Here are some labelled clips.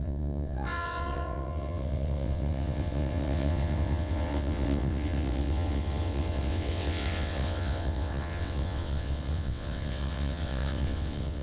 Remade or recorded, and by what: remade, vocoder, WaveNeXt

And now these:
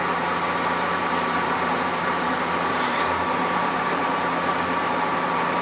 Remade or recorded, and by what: remade, vocoder, BigVGAN v2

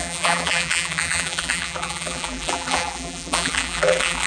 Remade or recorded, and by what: remade, vocoder, BigVGAN v2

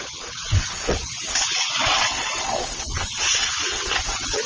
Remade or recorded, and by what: remade, vocoder, WaveNeXt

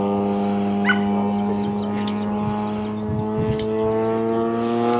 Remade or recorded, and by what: recorded